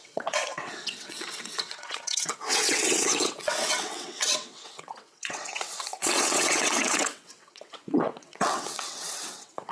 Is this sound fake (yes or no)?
yes